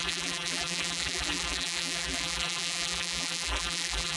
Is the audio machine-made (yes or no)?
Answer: yes